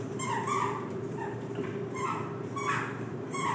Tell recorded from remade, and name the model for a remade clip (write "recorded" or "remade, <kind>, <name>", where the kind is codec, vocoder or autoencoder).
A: remade, vocoder, BigVGAN v2